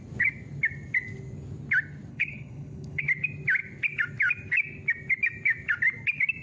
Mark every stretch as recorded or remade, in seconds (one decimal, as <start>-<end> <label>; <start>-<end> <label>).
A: 0.0-2.1 recorded; 2.1-3.0 remade; 3.0-6.4 recorded